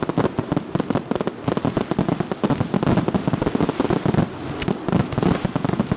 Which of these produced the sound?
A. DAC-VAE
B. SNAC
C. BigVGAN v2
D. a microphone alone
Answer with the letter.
D